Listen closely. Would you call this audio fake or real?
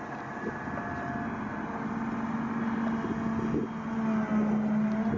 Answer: real